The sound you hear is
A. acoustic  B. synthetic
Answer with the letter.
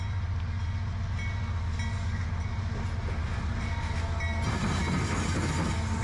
A